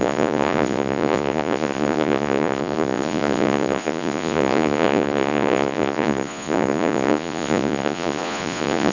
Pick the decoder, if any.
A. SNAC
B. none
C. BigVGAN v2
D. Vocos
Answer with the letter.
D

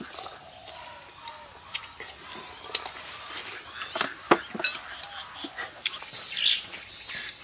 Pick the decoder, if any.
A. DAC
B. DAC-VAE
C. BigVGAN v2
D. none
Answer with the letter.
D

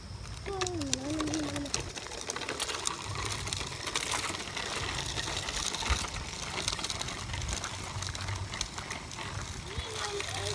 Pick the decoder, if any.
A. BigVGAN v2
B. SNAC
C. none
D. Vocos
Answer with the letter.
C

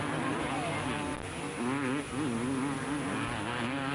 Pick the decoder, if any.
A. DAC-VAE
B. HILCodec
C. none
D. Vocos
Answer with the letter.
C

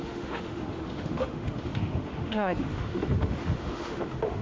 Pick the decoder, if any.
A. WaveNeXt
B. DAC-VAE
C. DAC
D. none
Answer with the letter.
B